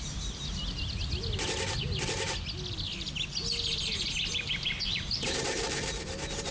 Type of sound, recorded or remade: recorded